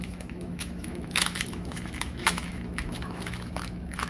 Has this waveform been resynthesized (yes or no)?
yes